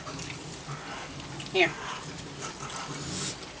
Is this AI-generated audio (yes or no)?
no